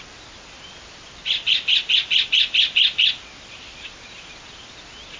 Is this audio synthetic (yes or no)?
no